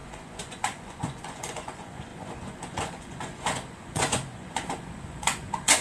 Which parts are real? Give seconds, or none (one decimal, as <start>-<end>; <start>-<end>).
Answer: none